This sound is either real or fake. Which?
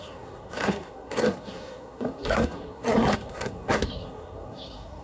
fake